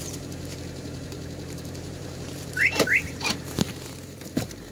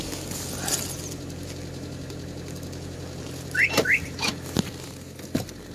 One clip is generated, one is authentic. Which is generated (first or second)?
first